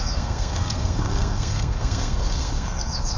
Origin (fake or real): fake